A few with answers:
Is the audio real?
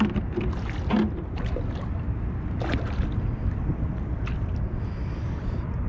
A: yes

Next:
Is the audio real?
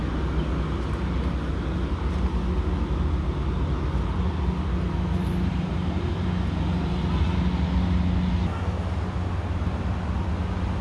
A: yes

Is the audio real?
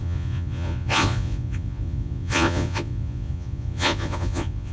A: no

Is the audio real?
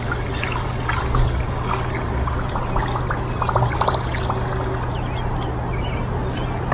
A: yes